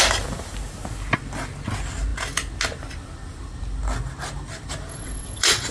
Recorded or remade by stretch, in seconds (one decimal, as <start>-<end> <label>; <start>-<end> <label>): 0.0-4.9 recorded; 4.9-5.7 remade